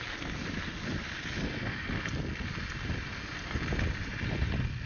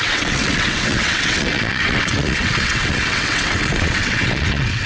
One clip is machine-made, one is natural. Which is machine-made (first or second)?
second